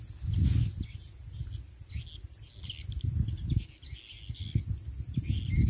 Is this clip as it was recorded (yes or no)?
yes